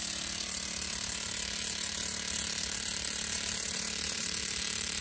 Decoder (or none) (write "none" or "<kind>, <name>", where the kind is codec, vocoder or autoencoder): vocoder, BigVGAN v2